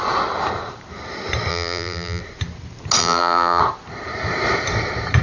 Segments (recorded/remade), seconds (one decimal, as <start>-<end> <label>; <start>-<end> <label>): 0.0-1.5 recorded; 1.5-2.2 remade; 2.2-3.0 recorded; 3.0-3.6 remade; 3.6-5.2 recorded

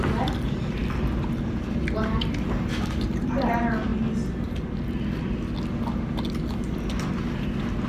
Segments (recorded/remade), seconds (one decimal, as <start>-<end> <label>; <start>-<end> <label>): 0.0-7.9 recorded

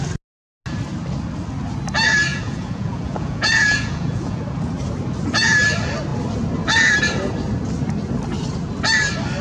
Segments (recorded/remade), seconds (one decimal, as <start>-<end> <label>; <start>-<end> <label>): 0.0-2.3 recorded; 2.3-4.4 remade; 4.4-9.4 recorded

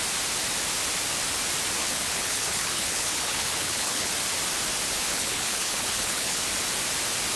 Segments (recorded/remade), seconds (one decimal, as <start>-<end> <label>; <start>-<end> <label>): 0.0-1.8 recorded; 1.8-4.1 remade; 4.1-5.1 recorded; 5.1-6.4 remade; 6.4-7.4 recorded

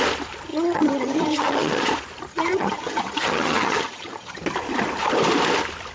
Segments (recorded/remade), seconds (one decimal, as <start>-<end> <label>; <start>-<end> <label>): 0.0-0.5 recorded; 0.5-1.9 remade; 1.9-2.3 recorded; 2.3-4.4 remade; 4.4-5.9 recorded

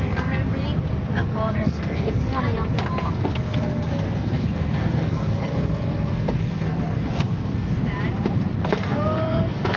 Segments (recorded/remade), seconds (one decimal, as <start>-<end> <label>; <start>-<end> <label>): 0.0-0.4 remade; 0.4-1.1 recorded; 1.1-2.3 remade; 2.3-3.1 recorded; 3.1-7.8 remade; 7.8-8.6 recorded; 8.6-9.8 remade